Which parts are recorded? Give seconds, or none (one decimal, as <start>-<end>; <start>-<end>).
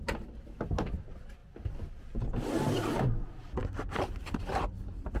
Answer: 0.0-5.2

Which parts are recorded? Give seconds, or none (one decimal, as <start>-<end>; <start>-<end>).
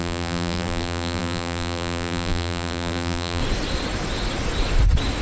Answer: 3.4-5.2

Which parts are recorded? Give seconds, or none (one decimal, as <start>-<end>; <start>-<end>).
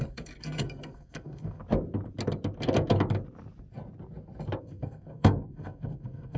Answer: 1.6-4.6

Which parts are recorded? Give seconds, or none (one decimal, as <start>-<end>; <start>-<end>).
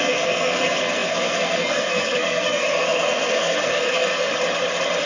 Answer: 4.3-5.1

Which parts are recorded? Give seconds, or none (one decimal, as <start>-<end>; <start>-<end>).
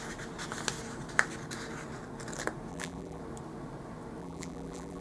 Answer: 0.0-2.7; 3.2-4.2